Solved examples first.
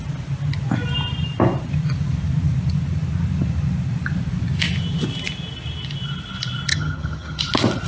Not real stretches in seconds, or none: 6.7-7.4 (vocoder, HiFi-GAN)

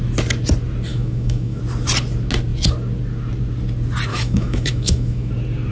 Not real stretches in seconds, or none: 0.9-1.6 (autoencoder, DAC-VAE); 4.1-5.3

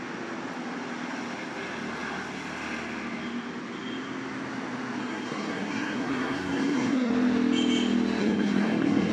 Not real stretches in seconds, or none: 5.0-7.1 (codec, SNAC); 8.2-9.1